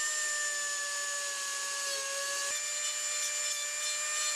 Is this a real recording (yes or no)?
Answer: yes